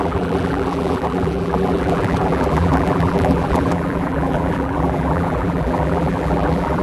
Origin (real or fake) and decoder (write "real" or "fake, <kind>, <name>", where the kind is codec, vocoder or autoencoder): fake, vocoder, BigVGAN v2